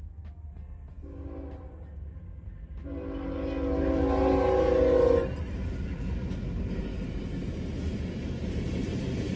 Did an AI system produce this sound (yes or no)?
no